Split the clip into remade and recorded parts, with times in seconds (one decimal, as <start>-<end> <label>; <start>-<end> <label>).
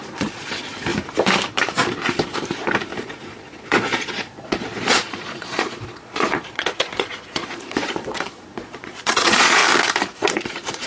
0.0-0.9 remade; 0.9-3.0 recorded; 3.0-9.6 remade; 9.6-10.3 recorded; 10.3-10.9 remade